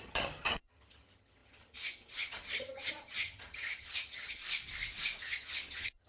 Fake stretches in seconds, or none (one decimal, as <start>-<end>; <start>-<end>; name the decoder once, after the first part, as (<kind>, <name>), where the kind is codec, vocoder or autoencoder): 0.0-4.4 (vocoder, HiFi-GAN); 5.2-6.1